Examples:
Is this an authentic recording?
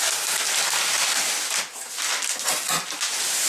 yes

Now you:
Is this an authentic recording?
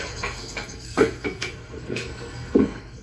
no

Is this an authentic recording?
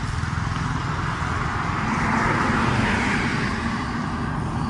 yes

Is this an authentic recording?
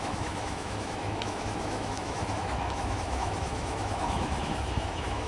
no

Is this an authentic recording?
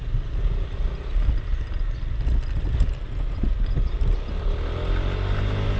yes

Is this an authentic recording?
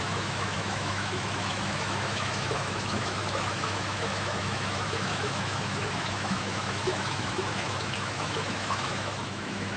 no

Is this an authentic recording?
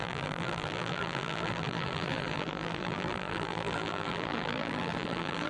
no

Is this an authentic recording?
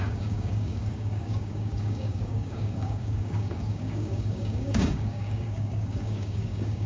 no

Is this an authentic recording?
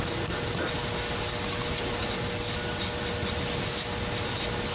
yes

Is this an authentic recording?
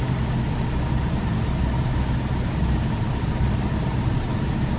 yes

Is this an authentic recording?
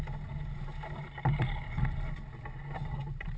yes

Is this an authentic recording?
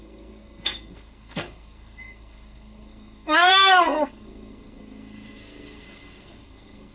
no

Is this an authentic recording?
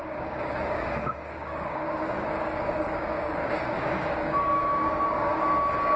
no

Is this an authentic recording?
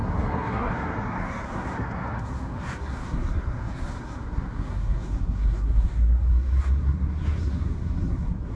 no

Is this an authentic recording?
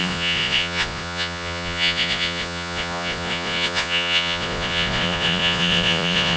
no